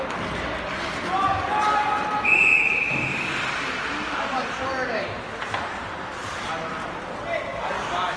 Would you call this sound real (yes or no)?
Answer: yes